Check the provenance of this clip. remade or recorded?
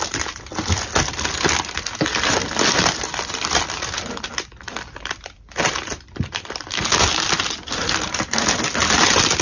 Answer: recorded